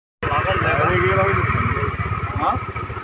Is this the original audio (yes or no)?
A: yes